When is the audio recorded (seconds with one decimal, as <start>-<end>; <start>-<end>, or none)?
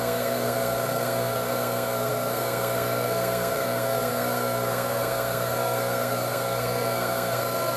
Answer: none